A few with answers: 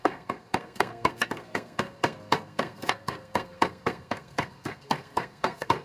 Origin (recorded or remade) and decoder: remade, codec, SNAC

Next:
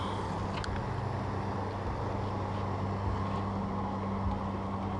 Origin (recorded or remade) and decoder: recorded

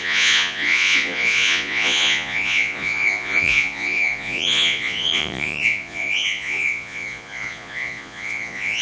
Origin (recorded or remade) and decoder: remade, vocoder, Vocos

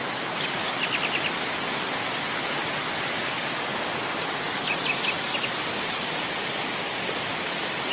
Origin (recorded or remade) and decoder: recorded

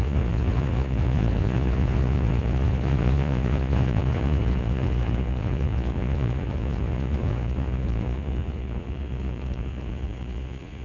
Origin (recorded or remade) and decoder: remade, vocoder, Vocos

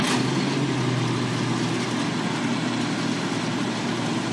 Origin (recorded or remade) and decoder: recorded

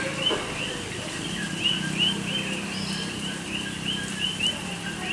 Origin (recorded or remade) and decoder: remade, vocoder, BigVGAN v2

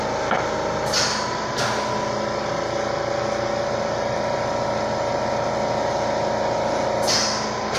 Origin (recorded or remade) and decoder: recorded